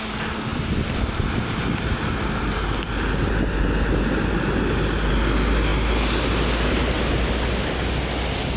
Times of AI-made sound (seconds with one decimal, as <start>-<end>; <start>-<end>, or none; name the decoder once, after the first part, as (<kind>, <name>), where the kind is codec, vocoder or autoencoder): none